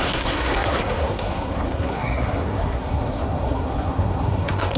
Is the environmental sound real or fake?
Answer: fake